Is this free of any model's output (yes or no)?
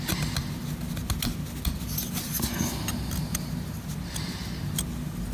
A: yes